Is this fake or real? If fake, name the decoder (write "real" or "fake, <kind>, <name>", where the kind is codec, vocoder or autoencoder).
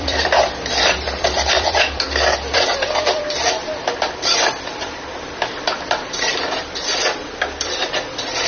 fake, vocoder, BigVGAN v2